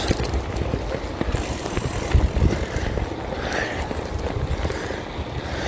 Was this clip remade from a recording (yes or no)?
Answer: no